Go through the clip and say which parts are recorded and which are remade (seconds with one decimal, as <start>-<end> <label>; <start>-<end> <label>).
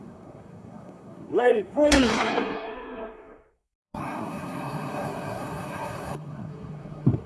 0.0-7.3 remade